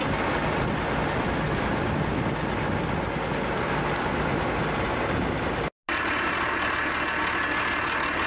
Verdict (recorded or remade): recorded